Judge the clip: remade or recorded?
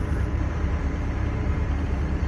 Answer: remade